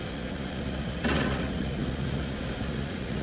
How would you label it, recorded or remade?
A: remade